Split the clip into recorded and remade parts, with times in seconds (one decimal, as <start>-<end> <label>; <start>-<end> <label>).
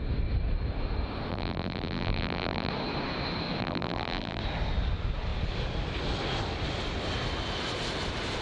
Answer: 0.0-1.3 recorded; 1.3-2.7 remade; 2.7-3.6 recorded; 3.6-4.4 remade; 4.4-8.4 recorded